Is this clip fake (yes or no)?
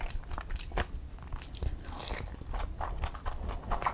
no